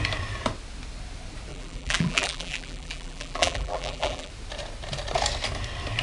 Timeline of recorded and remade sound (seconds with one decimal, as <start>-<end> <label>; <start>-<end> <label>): 0.0-1.5 recorded; 1.5-4.3 remade; 4.3-6.0 recorded